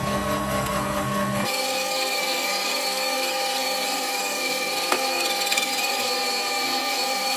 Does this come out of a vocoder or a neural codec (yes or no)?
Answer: yes